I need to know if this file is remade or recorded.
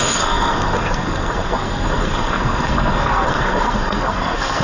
remade